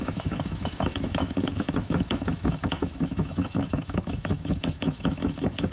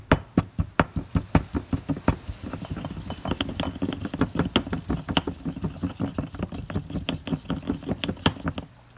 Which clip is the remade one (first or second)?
first